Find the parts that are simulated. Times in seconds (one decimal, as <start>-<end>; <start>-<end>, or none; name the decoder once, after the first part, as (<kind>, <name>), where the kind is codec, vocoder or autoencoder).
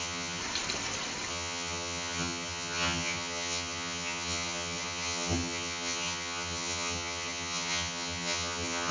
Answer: 0.0-0.4 (vocoder, HiFi-GAN); 1.3-8.9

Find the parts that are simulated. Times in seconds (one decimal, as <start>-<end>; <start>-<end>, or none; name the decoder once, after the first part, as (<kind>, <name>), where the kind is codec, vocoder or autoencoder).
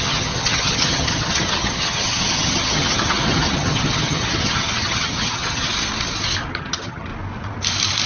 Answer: 0.0-5.7 (vocoder, HiFi-GAN); 6.5-7.1